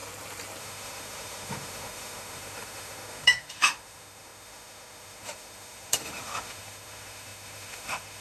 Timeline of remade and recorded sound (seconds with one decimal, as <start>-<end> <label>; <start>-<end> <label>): 0.0-0.6 recorded; 0.6-8.2 remade